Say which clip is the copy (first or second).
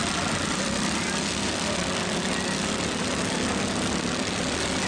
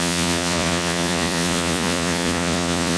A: second